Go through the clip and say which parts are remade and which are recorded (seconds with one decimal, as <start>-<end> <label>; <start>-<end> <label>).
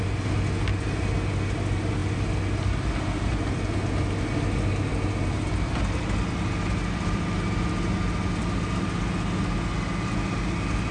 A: 0.0-10.9 recorded